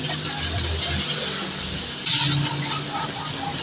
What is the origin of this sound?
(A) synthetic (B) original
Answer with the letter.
B